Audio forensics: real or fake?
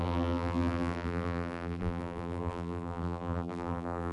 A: fake